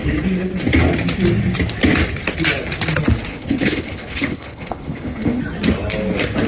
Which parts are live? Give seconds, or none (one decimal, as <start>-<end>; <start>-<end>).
0.0-3.3; 5.4-6.5